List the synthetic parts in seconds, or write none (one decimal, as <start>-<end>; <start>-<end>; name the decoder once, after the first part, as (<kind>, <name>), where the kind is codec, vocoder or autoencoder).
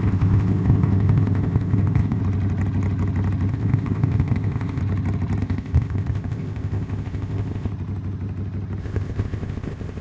0.0-2.2 (codec, ZipCodec); 3.5-4.8; 5.4-7.7; 8.8-10.0